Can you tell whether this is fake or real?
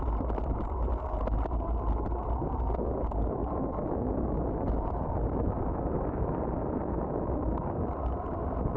real